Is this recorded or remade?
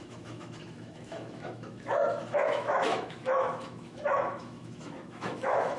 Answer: remade